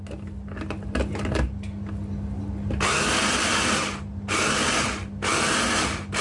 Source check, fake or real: real